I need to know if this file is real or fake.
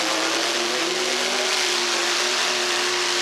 fake